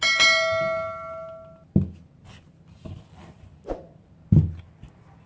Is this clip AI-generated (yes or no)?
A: no